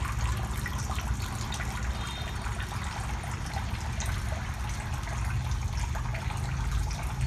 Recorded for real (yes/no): yes